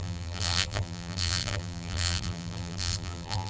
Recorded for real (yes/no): no